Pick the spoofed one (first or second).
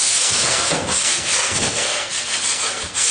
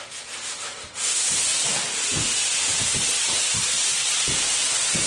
first